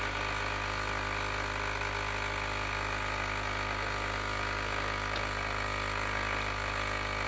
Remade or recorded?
recorded